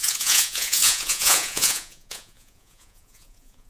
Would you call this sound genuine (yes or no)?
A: no